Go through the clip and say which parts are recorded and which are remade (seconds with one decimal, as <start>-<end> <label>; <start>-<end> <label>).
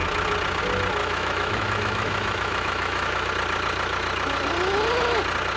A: 0.0-1.0 recorded; 1.0-3.3 remade; 3.3-5.6 recorded